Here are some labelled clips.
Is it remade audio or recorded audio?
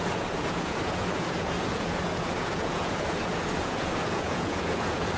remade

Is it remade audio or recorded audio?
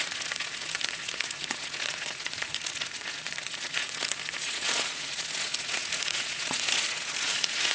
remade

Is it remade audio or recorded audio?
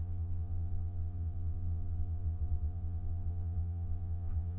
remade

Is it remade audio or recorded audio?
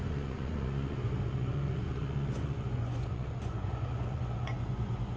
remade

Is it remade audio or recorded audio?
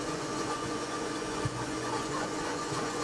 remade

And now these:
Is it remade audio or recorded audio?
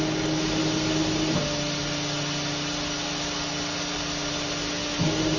recorded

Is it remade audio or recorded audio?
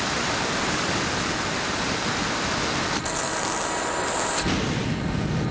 recorded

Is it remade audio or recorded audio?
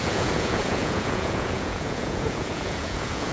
remade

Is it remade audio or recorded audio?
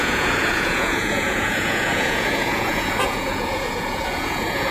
remade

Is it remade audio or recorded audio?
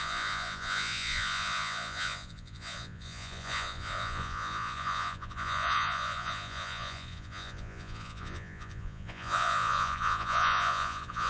remade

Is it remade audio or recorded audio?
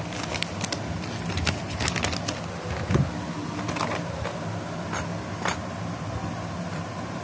recorded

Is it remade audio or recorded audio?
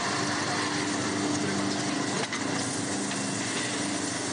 recorded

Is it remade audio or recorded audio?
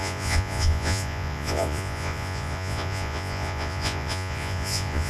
remade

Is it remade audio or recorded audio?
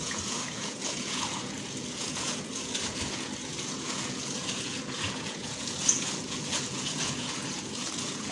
remade